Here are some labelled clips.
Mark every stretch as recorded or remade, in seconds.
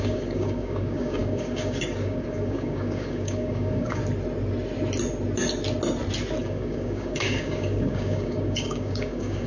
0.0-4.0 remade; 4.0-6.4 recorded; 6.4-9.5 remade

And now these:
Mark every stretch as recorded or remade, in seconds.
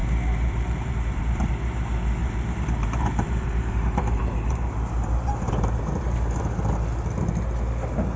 0.0-1.5 remade; 1.5-2.2 recorded; 2.2-6.4 remade; 6.4-8.2 recorded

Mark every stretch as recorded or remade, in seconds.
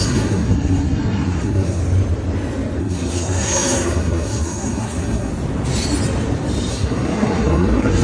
0.0-1.8 remade; 1.8-2.8 recorded; 2.8-5.3 remade; 5.3-6.7 recorded; 6.7-8.0 remade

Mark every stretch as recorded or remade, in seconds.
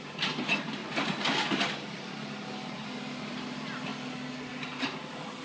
0.0-0.8 remade; 0.8-1.4 recorded; 1.4-3.9 remade; 3.9-4.5 recorded; 4.5-5.4 remade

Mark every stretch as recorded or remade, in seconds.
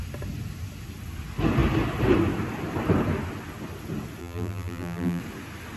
0.0-4.2 recorded; 4.2-5.2 remade; 5.2-5.8 recorded